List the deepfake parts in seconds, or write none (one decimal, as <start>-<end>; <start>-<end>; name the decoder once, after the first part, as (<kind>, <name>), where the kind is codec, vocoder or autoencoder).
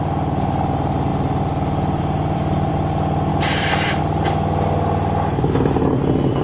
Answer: 1.1-2.7 (vocoder, BigVGAN v2); 3.3-4.0